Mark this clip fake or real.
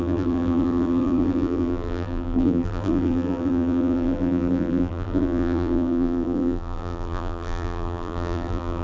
fake